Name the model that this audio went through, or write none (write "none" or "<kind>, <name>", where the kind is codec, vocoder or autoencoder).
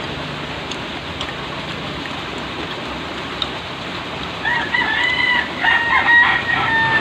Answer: none